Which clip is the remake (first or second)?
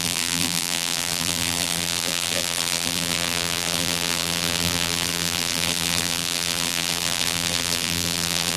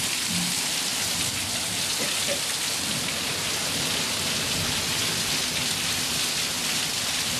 first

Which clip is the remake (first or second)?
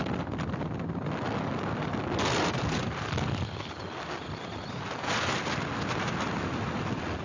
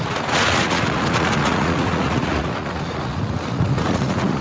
second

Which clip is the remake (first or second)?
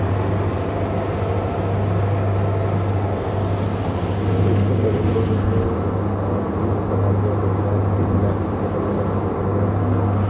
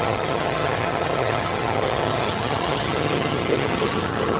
second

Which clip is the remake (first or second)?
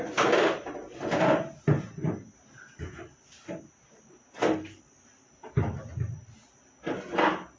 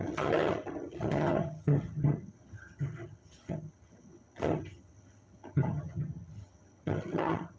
second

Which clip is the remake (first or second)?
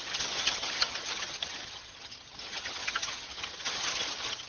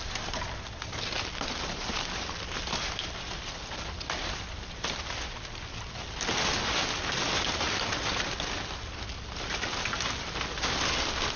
first